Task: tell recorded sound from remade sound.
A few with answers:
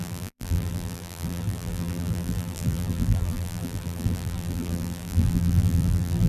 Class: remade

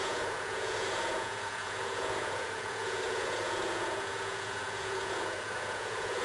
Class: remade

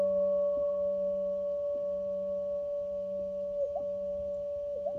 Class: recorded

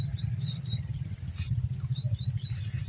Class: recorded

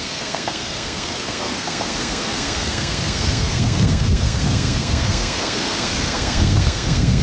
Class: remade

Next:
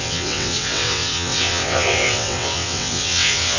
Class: remade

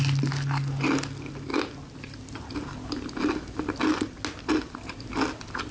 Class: recorded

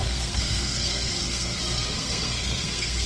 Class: remade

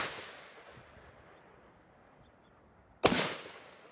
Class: recorded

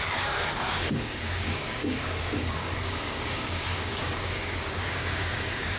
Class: remade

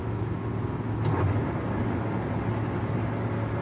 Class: recorded